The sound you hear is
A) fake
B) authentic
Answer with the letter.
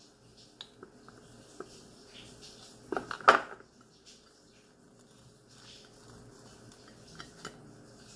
B